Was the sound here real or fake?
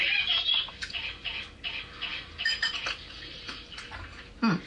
real